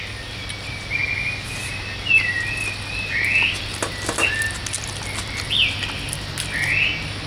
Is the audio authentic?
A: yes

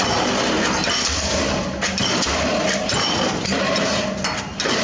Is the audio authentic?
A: no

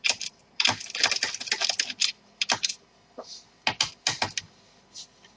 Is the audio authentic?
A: yes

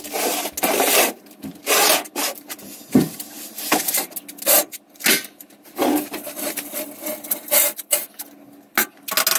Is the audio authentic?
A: yes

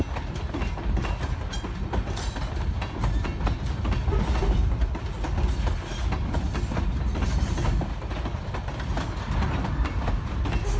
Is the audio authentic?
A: yes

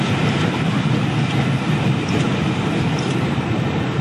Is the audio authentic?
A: no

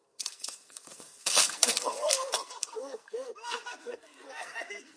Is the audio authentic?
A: no